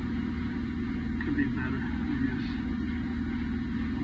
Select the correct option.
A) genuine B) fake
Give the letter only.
A